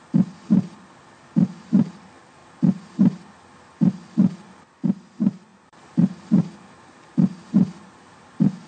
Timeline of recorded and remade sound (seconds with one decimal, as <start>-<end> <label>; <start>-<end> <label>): 0.0-5.5 recorded; 5.5-6.2 remade; 6.2-8.7 recorded